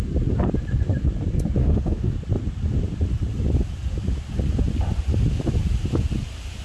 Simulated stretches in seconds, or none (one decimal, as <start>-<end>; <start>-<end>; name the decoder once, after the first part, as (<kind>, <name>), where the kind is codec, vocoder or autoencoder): 1.6-2.1 (autoencoder, DAC-VAE)